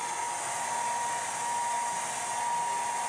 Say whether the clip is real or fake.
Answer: real